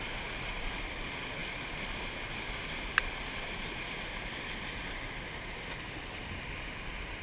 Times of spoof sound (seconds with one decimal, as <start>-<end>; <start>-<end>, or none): none